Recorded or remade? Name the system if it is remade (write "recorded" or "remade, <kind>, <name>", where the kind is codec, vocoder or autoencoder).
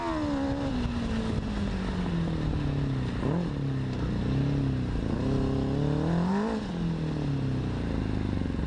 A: recorded